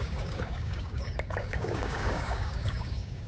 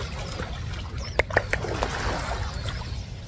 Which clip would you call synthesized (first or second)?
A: first